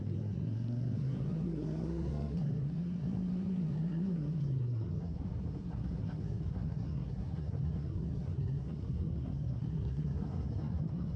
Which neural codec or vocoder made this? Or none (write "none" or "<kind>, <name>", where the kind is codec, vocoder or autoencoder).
codec, SNAC